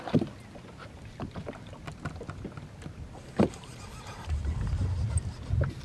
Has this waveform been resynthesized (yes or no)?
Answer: no